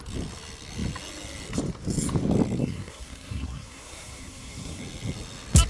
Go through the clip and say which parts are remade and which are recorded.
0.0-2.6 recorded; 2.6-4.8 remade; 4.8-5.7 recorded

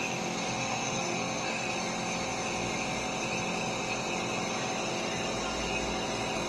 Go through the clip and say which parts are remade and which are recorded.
0.0-0.6 recorded; 0.6-1.7 remade; 1.7-6.5 recorded

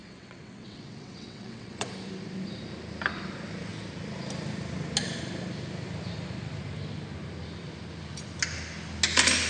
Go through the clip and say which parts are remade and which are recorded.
0.0-1.9 remade; 1.9-9.5 recorded

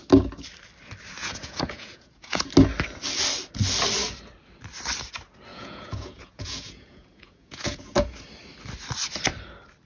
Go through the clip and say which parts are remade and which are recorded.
0.0-1.2 recorded; 1.2-2.5 remade; 2.5-5.5 recorded; 5.5-8.2 remade; 8.2-9.9 recorded

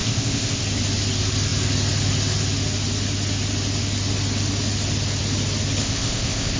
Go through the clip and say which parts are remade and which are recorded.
0.0-0.6 remade; 0.6-5.8 recorded; 5.8-6.6 remade